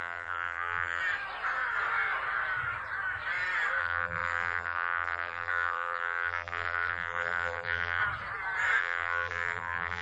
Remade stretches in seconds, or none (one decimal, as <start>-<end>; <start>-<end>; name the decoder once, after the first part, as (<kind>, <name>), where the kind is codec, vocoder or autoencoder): 0.0-1.0 (vocoder, BigVGAN v2); 3.8-8.0; 8.8-10.0

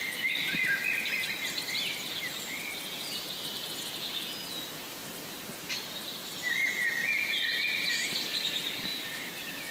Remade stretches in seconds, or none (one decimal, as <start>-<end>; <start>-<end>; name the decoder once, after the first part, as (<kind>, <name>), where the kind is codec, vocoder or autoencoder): 1.9-2.5 (vocoder, BigVGAN v2); 5.0-5.5; 8.9-9.7